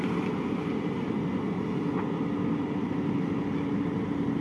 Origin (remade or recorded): recorded